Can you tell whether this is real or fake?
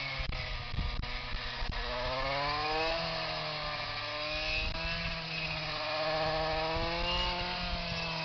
real